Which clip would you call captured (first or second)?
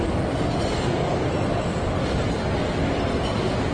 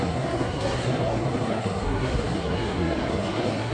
first